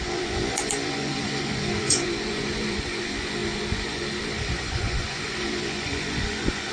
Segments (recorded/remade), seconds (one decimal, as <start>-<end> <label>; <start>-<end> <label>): 0.0-6.7 remade